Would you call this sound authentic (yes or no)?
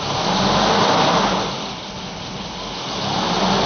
yes